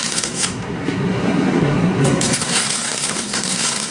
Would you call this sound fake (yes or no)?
yes